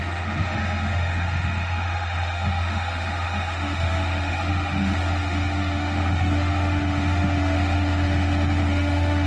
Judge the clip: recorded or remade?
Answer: remade